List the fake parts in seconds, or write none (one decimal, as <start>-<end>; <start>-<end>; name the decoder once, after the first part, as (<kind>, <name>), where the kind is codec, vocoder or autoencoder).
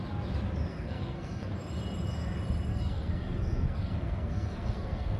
0.7-1.5 (codec, SNAC); 2.7-5.2